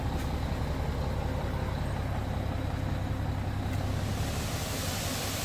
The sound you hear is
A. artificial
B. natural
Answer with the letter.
B